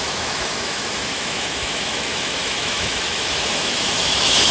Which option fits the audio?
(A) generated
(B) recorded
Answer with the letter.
A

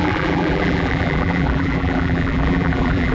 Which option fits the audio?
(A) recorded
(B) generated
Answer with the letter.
B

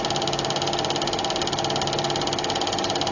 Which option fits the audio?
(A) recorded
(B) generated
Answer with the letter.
A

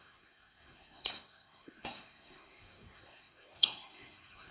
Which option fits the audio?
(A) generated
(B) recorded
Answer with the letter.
A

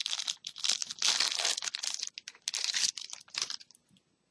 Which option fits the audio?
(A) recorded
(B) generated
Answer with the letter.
A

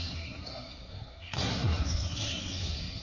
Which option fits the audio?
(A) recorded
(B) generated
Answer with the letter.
B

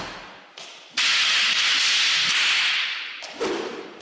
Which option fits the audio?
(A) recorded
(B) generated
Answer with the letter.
A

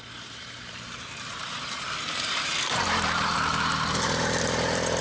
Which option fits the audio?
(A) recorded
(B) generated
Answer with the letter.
B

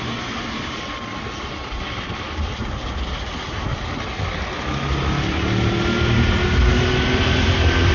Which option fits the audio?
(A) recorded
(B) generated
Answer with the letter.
A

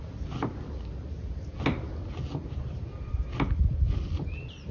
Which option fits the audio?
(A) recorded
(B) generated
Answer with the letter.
A